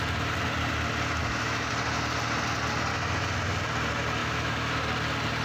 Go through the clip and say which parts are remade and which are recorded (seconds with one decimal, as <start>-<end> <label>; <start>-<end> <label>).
0.0-1.2 recorded; 1.2-1.7 remade; 1.7-4.2 recorded; 4.2-4.7 remade; 4.7-5.4 recorded